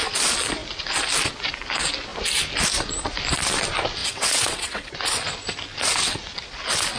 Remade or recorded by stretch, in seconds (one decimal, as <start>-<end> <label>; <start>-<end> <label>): 0.0-4.0 recorded; 4.0-4.9 remade; 4.9-7.0 recorded